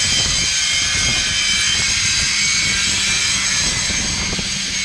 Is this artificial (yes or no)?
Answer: no